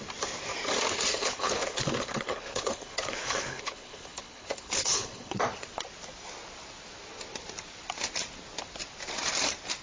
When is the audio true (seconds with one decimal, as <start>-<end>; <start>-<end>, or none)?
0.0-1.1; 5.4-9.8